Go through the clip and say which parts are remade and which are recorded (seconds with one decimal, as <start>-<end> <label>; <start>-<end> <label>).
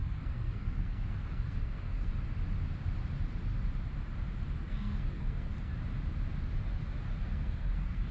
0.0-2.1 remade; 2.1-4.6 recorded; 4.6-5.7 remade; 5.7-7.2 recorded; 7.2-8.1 remade